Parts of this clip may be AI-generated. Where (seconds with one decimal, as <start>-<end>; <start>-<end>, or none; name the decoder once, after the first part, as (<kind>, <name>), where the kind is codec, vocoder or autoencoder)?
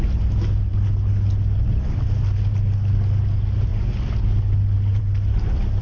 none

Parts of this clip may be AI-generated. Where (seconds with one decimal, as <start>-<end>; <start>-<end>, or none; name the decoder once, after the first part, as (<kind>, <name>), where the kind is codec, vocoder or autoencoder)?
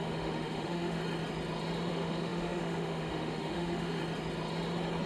0.0-1.0 (autoencoder, DAC-VAE); 1.9-4.0